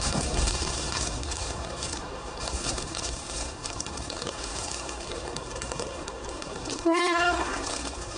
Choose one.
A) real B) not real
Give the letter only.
B